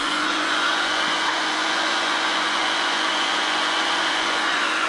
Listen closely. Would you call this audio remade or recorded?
remade